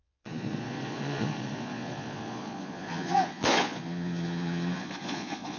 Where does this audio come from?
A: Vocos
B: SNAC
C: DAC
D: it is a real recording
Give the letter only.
A